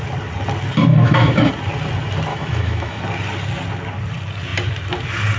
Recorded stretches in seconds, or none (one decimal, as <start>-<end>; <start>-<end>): 0.0-0.9; 1.5-2.3; 3.0-5.4